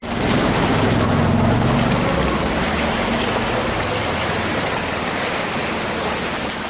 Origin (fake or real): real